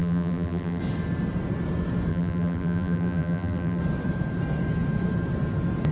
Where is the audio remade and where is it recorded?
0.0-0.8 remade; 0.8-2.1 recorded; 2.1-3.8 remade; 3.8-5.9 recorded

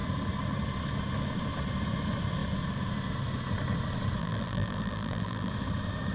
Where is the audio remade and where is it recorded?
0.0-4.2 recorded; 4.2-5.5 remade; 5.5-6.1 recorded

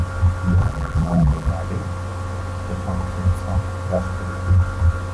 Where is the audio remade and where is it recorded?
0.0-0.6 recorded; 0.6-1.5 remade; 1.5-5.1 recorded

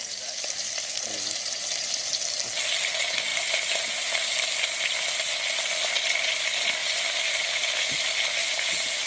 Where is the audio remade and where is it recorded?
0.0-3.3 recorded; 3.3-4.1 remade; 4.1-6.8 recorded; 6.8-7.7 remade; 7.7-8.4 recorded; 8.4-9.1 remade

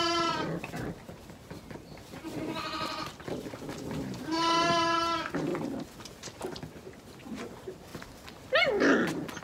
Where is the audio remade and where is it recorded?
0.0-9.4 recorded

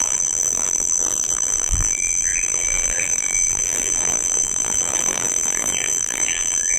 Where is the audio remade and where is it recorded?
0.0-6.8 remade

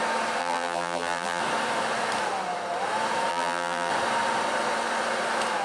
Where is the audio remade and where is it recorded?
0.0-0.4 recorded; 0.4-1.4 remade; 1.4-3.3 recorded; 3.3-3.9 remade; 3.9-5.6 recorded

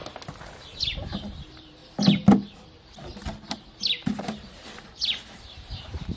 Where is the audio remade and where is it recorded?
0.0-0.8 recorded; 0.8-1.8 remade; 1.8-4.2 recorded; 4.2-6.2 remade